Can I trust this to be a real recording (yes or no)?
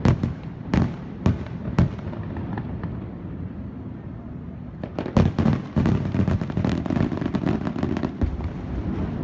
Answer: no